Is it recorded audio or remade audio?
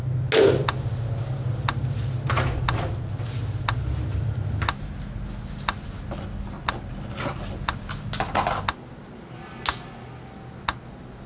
recorded